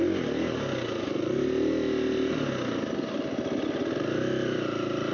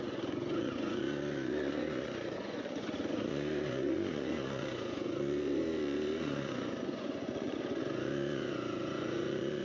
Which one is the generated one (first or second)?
second